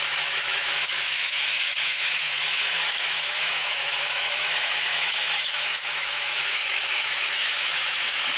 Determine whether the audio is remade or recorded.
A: remade